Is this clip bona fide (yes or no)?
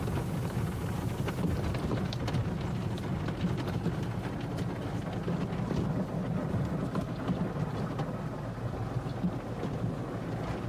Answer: yes